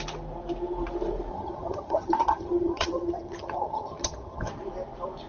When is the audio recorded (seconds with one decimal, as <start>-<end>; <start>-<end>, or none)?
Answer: 0.0-1.3; 4.5-5.3